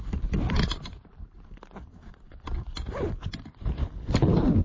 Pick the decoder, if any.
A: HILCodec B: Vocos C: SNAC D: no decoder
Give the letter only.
D